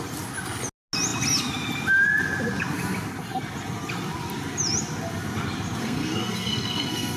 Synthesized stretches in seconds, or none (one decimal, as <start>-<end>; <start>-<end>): 5.8-7.2